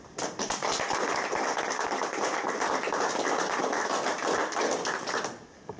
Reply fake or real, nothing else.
real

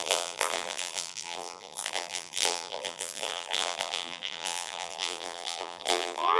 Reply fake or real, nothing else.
fake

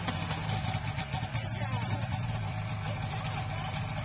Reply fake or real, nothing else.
fake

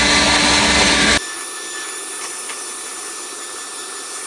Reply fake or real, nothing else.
real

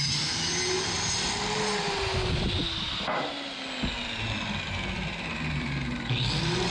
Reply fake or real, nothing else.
real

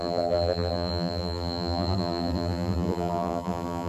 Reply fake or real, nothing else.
fake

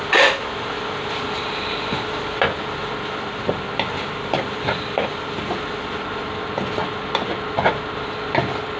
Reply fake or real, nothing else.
real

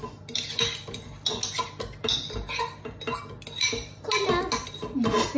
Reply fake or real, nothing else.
real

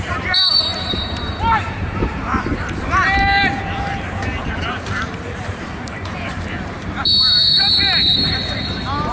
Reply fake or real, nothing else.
fake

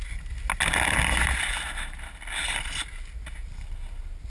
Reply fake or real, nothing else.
real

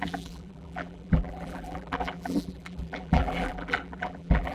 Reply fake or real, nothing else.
fake